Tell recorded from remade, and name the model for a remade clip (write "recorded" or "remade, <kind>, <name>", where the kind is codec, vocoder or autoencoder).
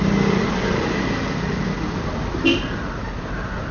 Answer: recorded